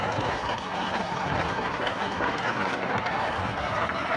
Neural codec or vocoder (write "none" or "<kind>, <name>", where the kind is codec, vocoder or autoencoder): codec, SNAC